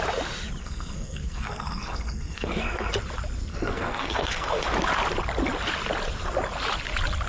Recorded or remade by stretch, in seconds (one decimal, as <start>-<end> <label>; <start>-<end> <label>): 0.0-0.6 recorded; 0.6-2.9 remade; 2.9-3.5 recorded; 3.5-4.6 remade; 4.6-7.3 recorded